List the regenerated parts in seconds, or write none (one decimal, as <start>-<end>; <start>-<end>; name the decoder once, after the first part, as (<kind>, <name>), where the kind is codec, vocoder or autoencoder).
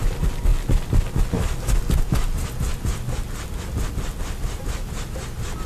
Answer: none